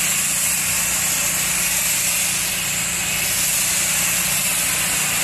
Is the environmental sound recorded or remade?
recorded